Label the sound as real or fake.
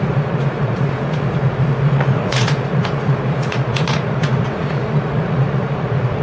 fake